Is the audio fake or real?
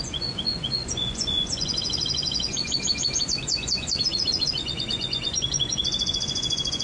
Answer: fake